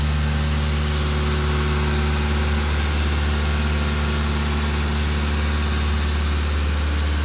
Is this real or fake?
real